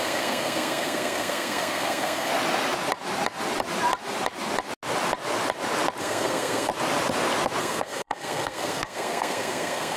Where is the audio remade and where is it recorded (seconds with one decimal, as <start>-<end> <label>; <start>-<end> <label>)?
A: 0.0-2.3 remade; 2.3-6.0 recorded; 6.0-6.7 remade; 6.7-7.6 recorded; 7.6-10.0 remade